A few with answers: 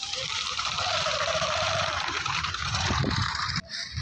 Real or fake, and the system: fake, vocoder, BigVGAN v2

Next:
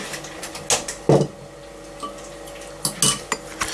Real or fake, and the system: real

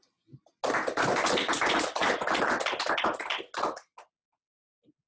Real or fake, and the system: real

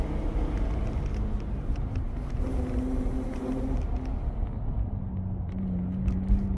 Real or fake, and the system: real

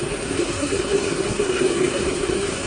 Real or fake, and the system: fake, codec, SNAC